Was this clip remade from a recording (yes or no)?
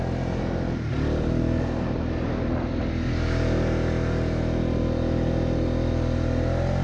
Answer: no